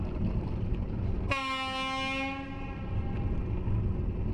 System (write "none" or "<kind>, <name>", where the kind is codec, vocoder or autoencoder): none